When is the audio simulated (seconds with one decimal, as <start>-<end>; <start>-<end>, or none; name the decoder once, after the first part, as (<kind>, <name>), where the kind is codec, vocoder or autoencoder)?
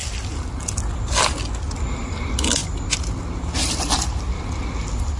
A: none